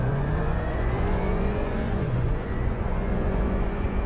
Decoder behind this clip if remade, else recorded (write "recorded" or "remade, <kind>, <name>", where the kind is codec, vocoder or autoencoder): remade, vocoder, Vocos